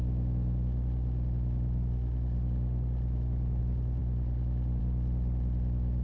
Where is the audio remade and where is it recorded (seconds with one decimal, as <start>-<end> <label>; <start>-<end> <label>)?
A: 0.0-3.6 recorded; 3.6-6.0 remade